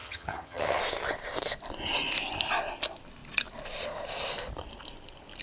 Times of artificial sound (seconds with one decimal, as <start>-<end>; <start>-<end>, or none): 0.0-0.8